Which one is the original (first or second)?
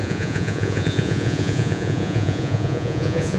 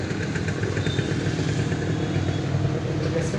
second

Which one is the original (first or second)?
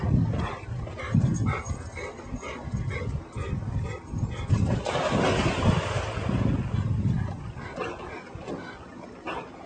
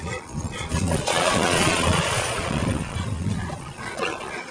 first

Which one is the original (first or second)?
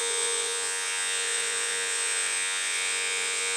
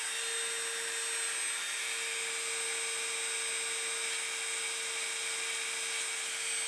second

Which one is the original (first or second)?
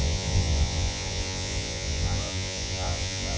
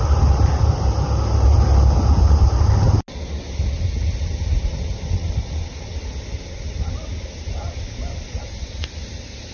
second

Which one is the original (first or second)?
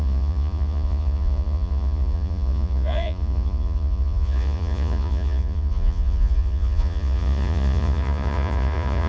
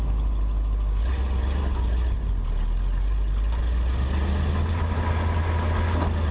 second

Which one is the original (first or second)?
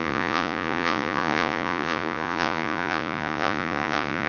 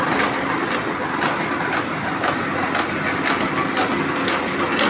second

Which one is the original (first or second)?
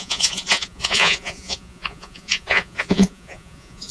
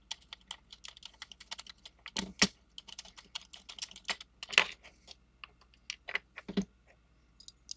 second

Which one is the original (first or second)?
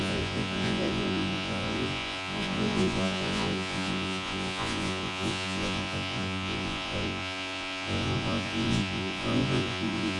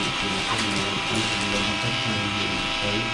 second